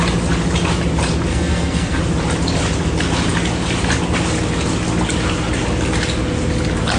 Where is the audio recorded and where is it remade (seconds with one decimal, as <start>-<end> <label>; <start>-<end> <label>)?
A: 0.0-1.3 recorded; 1.3-2.0 remade; 2.0-7.0 recorded